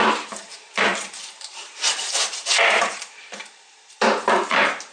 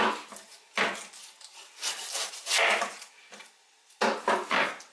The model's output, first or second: first